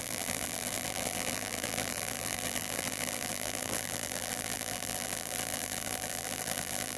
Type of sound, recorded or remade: remade